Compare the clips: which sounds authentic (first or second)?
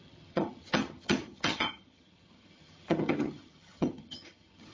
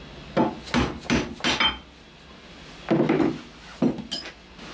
second